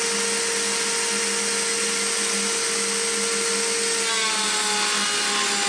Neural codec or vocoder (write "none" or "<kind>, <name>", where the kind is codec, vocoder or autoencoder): none